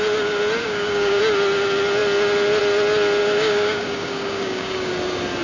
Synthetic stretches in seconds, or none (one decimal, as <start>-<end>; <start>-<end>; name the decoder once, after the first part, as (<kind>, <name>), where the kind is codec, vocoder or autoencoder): 0.6-1.2 (codec, DAC); 3.2-4.9